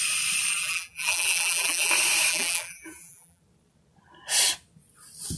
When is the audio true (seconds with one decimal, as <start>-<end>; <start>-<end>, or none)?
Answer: 0.0-0.5; 1.9-2.3; 3.4-5.4